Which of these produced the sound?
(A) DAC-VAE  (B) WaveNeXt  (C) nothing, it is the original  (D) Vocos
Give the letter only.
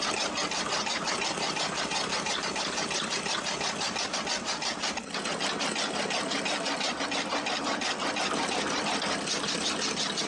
C